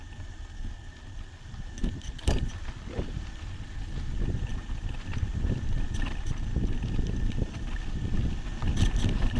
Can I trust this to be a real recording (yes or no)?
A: yes